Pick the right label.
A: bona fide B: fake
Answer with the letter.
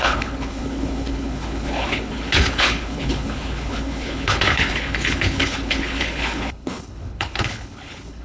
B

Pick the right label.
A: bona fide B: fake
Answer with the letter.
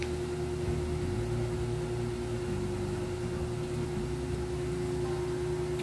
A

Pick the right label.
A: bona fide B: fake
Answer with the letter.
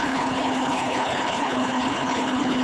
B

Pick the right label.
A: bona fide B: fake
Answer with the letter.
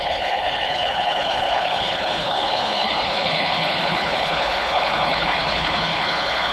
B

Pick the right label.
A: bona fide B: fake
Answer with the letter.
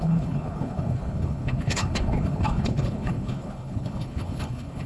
B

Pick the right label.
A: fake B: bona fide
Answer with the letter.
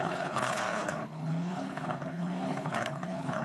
A